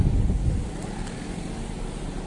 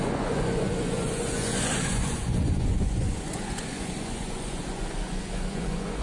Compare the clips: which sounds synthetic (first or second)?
second